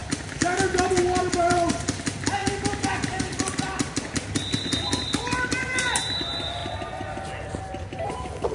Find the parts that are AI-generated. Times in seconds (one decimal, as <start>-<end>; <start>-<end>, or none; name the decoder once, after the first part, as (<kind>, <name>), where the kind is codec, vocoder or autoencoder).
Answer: 1.2-6.6 (vocoder, BigVGAN v2); 7.6-8.5